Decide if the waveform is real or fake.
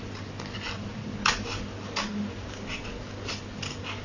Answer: real